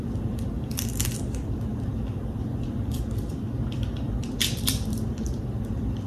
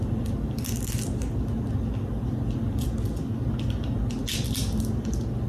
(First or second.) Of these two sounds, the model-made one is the first